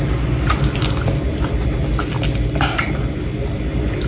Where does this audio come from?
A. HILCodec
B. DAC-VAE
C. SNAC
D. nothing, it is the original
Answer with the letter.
D